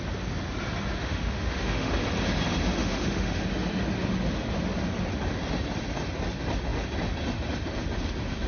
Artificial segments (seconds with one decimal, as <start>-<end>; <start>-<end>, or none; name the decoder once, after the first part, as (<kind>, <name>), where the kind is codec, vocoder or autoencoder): 1.0-1.9 (autoencoder, DAC-VAE); 2.8-3.4